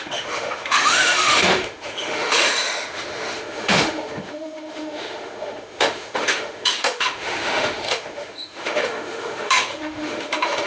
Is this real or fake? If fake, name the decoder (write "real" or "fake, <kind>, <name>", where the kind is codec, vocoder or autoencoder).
fake, autoencoder, DAC-VAE